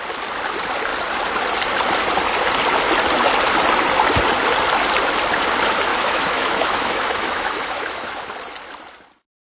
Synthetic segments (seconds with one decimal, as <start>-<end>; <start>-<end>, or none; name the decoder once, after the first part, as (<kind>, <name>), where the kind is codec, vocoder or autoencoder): 5.9-8.2 (autoencoder, DAC-VAE)